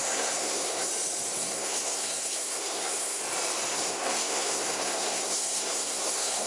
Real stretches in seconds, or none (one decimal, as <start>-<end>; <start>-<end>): 0.9-1.4; 3.2-3.7